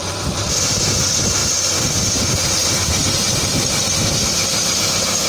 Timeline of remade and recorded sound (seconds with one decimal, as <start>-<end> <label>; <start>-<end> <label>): 0.0-1.4 remade; 1.4-2.0 recorded; 2.0-3.0 remade; 3.0-4.5 recorded; 4.5-5.3 remade